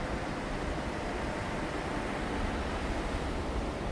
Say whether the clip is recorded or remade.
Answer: recorded